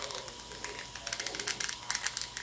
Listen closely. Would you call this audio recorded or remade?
recorded